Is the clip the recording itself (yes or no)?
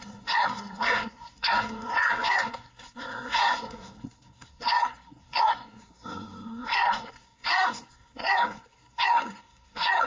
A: no